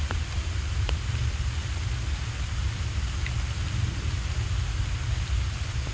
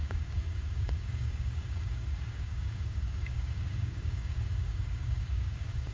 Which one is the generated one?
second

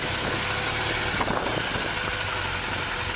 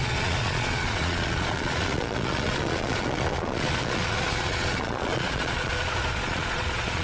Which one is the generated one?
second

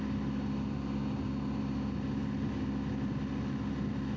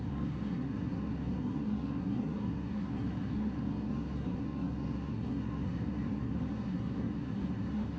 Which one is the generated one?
second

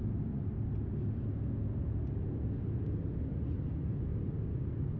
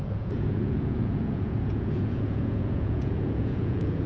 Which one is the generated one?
second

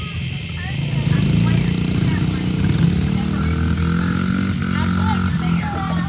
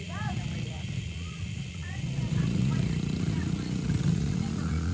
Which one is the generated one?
second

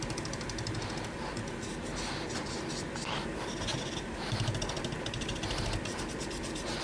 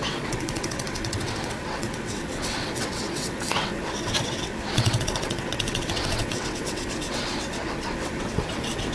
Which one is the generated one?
second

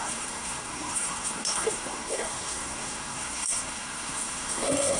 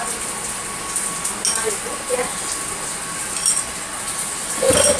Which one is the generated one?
first